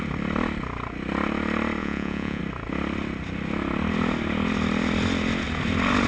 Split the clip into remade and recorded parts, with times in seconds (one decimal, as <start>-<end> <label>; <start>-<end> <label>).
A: 0.0-1.8 recorded; 1.8-2.4 remade; 2.4-6.1 recorded